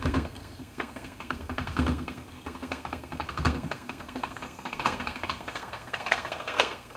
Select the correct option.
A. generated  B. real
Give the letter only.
A